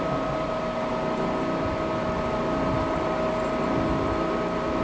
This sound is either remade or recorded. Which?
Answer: recorded